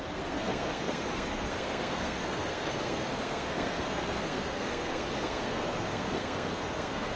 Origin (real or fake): fake